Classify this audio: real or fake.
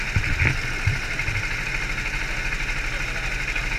real